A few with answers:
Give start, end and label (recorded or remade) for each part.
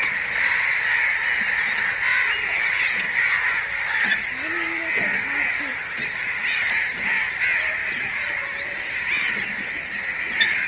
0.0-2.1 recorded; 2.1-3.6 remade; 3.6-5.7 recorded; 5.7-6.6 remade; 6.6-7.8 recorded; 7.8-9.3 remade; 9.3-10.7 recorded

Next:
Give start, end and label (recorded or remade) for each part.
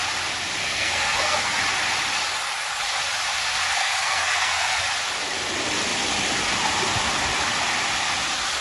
0.0-0.6 recorded; 0.6-1.6 remade; 1.6-3.8 recorded; 3.8-4.8 remade; 4.8-8.6 recorded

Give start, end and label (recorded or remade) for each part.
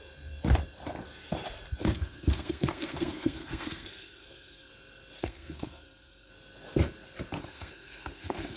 0.0-1.8 recorded; 1.8-4.7 remade; 4.7-5.2 recorded; 5.2-6.3 remade; 6.3-7.4 recorded; 7.4-8.6 remade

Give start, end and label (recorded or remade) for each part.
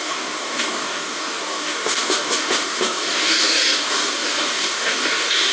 0.0-5.5 remade